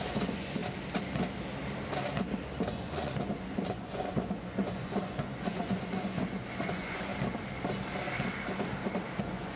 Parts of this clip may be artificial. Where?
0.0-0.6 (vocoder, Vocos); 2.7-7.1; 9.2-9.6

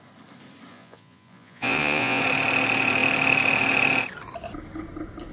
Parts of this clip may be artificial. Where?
0.7-2.2 (vocoder, Vocos)

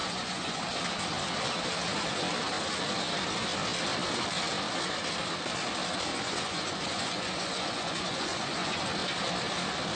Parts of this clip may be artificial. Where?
0.0-0.6 (vocoder, Vocos); 6.1-8.8